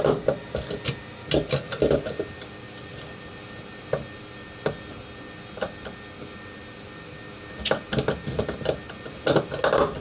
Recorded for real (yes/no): yes